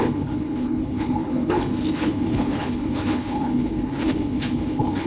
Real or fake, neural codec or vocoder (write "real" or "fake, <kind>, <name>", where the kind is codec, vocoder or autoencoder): fake, codec, HILCodec